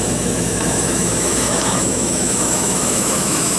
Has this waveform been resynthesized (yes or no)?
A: yes